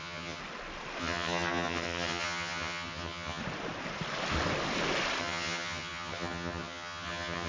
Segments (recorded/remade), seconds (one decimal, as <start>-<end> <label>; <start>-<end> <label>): 0.0-0.4 remade; 0.4-1.0 recorded; 1.0-3.4 remade; 3.4-5.2 recorded; 5.2-7.5 remade